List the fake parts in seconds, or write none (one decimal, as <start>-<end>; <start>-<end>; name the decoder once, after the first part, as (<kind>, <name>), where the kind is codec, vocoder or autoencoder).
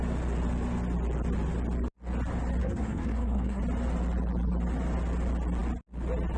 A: 2.6-3.6 (codec, SNAC)